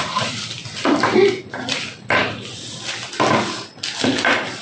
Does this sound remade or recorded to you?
recorded